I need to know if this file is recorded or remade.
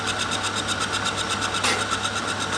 recorded